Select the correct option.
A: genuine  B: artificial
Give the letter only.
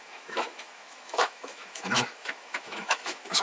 B